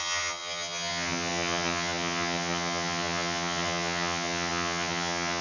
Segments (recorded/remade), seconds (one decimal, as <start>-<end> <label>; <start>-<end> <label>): 0.0-5.4 remade